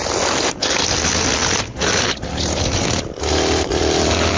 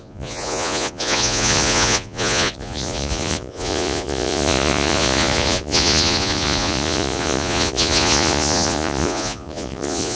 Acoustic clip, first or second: first